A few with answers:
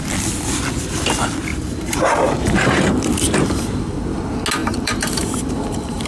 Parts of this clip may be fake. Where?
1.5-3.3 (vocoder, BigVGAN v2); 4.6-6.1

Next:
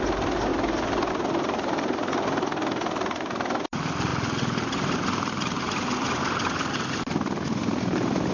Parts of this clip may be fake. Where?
none

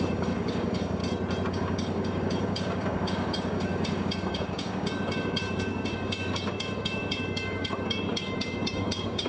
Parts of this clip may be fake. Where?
0.0-1.0 (codec, DAC); 1.5-9.3

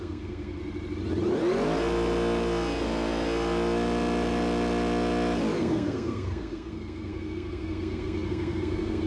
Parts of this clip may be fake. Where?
0.0-0.6 (codec, SNAC); 5.6-9.1

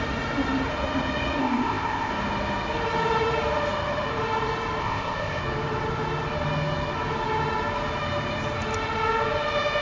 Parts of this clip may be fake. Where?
1.4-2.1 (codec, ZipCodec); 4.8-5.4

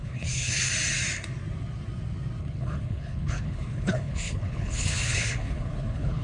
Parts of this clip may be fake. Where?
0.0-0.7 (codec, HILCodec); 2.4-6.2

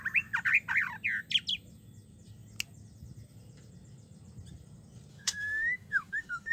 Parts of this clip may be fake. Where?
5.1-6.5 (autoencoder, DAC-VAE)